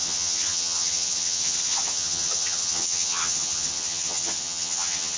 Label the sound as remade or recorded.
remade